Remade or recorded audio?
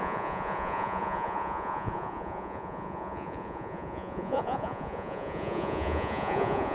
remade